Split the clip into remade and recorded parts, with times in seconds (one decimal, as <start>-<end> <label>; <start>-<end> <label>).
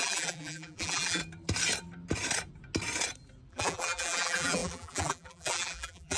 0.0-1.2 remade; 1.2-3.5 recorded; 3.5-6.2 remade